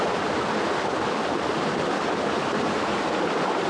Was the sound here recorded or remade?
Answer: recorded